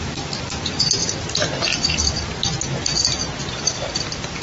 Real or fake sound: real